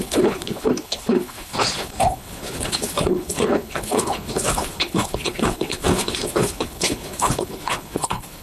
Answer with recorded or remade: remade